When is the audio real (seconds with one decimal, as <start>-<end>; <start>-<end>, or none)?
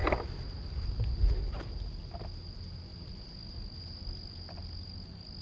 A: 0.0-5.4